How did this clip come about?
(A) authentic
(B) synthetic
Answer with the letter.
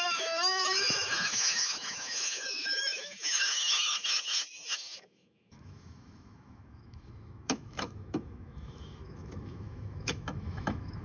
B